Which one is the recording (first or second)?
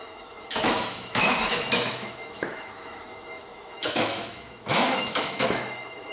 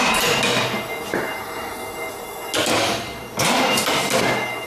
second